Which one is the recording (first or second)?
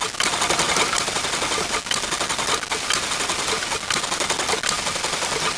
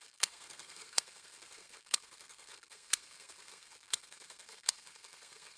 first